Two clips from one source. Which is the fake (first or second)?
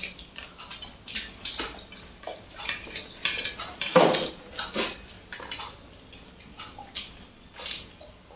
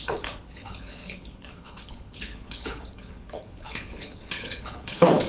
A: second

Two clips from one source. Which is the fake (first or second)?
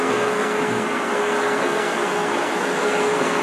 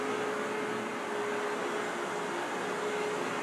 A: first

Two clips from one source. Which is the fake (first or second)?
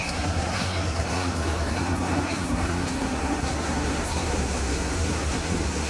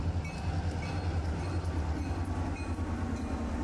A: first